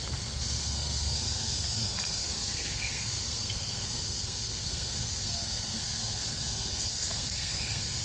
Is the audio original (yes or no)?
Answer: no